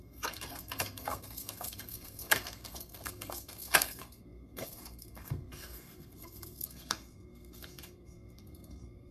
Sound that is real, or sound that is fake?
fake